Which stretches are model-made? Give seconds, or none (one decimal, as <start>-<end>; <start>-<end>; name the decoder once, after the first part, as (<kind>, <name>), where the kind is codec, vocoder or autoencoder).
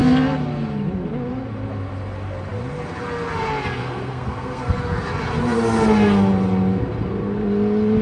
3.8-4.8 (codec, SNAC)